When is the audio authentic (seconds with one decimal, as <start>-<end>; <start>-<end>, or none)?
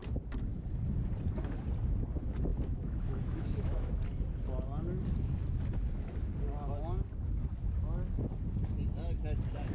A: 0.0-2.5; 3.9-9.7